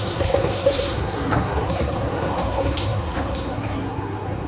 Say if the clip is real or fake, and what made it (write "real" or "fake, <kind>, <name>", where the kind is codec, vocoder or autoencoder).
fake, codec, SNAC